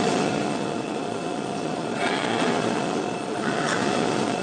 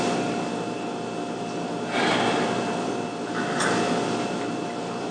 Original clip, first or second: second